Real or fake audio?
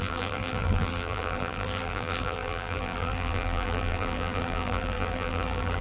fake